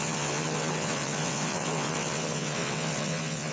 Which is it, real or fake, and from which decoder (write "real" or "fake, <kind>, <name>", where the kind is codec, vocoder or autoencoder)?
fake, vocoder, WaveNeXt